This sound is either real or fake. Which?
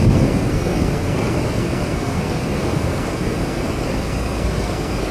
fake